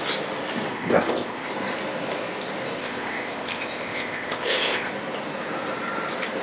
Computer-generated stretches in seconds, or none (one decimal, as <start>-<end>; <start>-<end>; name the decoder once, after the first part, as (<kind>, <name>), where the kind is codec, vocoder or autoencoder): 0.7-1.5 (codec, ZipCodec); 2.8-4.9